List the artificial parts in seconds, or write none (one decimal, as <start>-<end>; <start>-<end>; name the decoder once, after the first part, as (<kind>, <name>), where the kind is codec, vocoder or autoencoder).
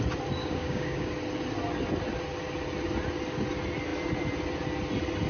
0.4-1.1 (codec, DAC)